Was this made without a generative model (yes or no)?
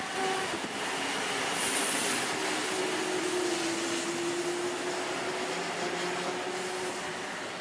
yes